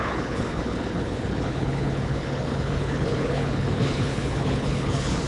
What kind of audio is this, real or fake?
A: fake